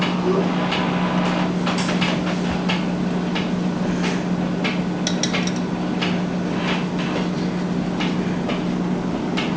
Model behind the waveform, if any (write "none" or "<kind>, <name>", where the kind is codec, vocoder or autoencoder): none